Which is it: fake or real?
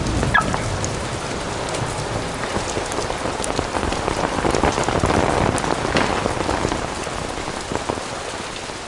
real